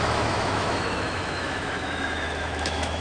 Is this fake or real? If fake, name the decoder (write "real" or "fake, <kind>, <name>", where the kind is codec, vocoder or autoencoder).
fake, autoencoder, DAC-VAE